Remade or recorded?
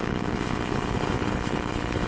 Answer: remade